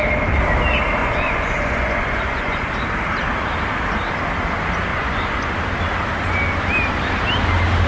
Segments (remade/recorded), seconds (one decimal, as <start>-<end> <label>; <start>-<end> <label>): 0.0-1.0 recorded; 1.0-2.7 remade; 2.7-4.9 recorded; 4.9-5.5 remade; 5.5-7.9 recorded